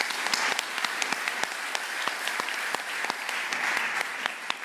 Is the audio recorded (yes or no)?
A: yes